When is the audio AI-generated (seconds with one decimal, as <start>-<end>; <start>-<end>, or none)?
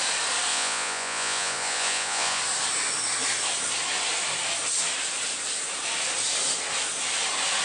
0.5-2.4